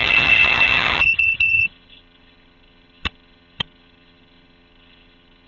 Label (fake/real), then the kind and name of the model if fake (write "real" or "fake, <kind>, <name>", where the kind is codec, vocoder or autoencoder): fake, vocoder, HiFi-GAN